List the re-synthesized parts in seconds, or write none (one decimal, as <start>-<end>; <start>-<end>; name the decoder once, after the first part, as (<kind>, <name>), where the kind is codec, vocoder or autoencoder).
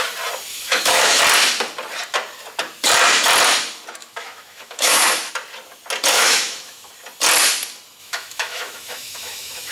0.5-1.2 (autoencoder, DAC-VAE); 4.0-5.3; 6.1-6.9; 8.0-9.7